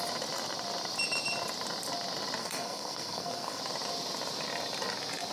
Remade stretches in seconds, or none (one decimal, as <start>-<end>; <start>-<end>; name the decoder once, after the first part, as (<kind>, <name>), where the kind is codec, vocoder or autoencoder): 2.4-3.6 (codec, SNAC)